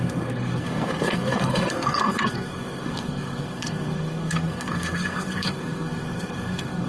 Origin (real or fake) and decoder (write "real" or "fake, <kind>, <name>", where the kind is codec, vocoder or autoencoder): fake, codec, SNAC